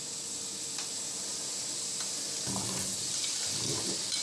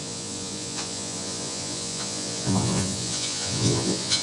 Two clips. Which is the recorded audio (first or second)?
first